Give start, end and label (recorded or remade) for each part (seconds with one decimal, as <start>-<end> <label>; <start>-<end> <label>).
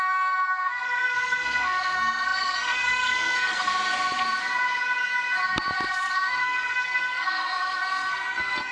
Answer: 0.0-3.7 remade; 3.7-5.9 recorded; 5.9-8.7 remade